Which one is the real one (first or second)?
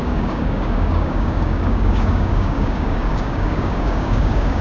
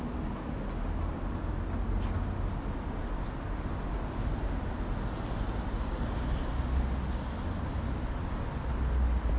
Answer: second